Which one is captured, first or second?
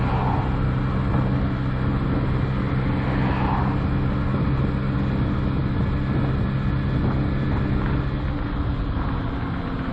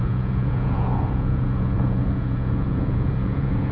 first